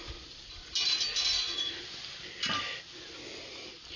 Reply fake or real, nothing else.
real